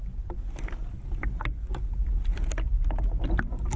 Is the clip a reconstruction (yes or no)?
no